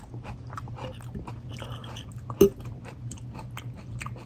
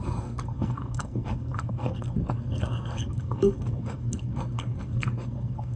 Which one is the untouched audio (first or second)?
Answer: first